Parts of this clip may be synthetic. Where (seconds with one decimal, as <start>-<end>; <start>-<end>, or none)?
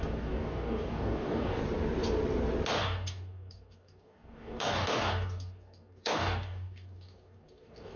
0.0-1.6; 2.8-8.0